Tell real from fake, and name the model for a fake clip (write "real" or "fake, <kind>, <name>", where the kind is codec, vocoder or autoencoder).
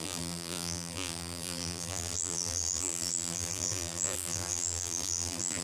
fake, vocoder, BigVGAN v2